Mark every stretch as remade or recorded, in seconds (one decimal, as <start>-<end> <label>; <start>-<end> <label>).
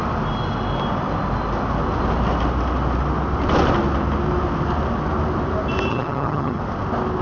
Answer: 0.0-5.9 recorded; 5.9-6.6 remade; 6.6-7.2 recorded